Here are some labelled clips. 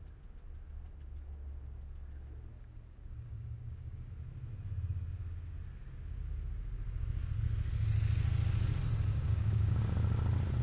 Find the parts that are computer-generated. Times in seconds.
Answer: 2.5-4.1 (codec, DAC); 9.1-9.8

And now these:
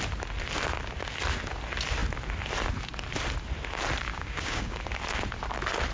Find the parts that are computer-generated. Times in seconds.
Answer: 4.1-4.8 (codec, DAC)